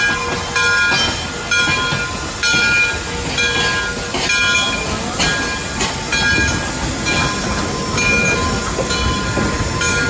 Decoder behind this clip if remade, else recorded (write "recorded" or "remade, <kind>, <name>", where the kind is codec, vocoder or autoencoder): recorded